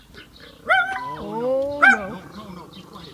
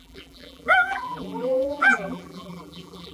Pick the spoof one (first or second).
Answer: second